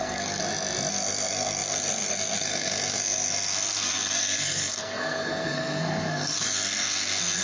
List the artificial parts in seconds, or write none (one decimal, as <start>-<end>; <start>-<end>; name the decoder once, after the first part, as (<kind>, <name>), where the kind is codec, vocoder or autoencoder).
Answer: 0.0-0.4 (codec, SNAC); 0.9-7.4